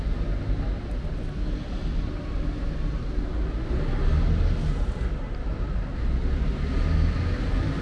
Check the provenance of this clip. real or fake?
real